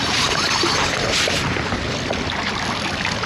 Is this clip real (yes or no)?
no